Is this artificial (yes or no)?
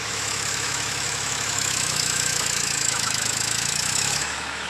yes